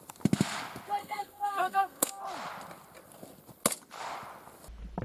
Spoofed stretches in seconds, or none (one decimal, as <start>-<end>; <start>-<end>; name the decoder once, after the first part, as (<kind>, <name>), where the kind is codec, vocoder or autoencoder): 1.0-2.2 (codec, SNAC)